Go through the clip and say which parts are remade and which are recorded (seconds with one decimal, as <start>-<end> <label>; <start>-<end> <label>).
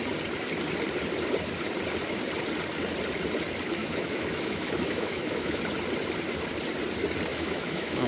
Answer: 0.0-3.8 recorded; 3.8-5.6 remade; 5.6-7.3 recorded; 7.3-8.1 remade